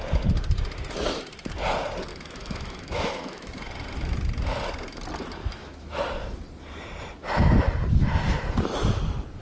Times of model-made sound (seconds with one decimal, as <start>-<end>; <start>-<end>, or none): 2.1-3.5; 5.4-6.0